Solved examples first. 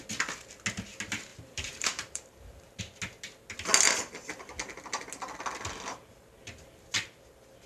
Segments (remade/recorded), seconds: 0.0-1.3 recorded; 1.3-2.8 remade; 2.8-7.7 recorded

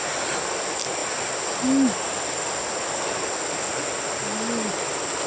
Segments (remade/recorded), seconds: 0.0-5.3 recorded

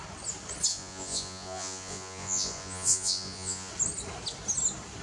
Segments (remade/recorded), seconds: 0.0-0.7 recorded; 0.7-3.7 remade; 3.7-5.0 recorded

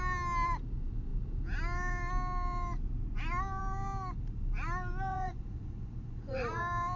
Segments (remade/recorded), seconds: 0.0-5.1 recorded; 5.1-6.6 remade; 6.6-7.0 recorded

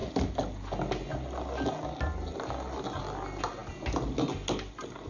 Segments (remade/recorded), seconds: 0.0-5.1 recorded

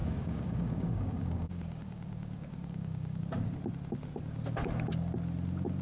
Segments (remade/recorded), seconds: 0.0-3.2 remade; 3.2-5.8 recorded